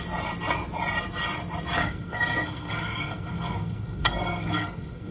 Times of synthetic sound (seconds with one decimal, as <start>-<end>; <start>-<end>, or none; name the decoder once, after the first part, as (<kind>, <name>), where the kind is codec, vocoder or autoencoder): 1.8-5.1 (codec, SNAC)